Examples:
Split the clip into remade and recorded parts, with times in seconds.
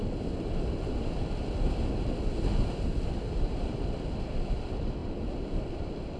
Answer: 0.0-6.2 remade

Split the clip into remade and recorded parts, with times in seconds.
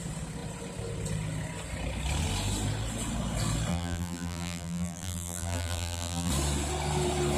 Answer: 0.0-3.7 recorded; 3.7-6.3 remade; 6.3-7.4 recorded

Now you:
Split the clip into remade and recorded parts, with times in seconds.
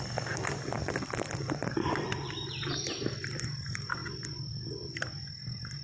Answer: 0.0-0.8 recorded; 0.8-2.4 remade; 2.4-5.8 recorded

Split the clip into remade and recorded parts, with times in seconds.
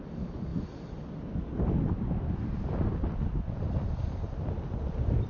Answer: 0.0-5.3 remade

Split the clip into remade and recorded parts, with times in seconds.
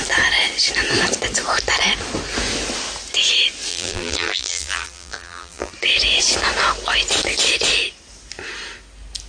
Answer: 0.0-3.7 recorded; 3.7-5.7 remade; 5.7-9.3 recorded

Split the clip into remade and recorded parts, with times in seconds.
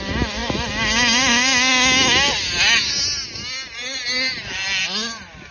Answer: 0.0-5.5 recorded